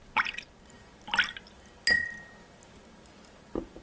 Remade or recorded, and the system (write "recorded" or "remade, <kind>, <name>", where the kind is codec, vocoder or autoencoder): recorded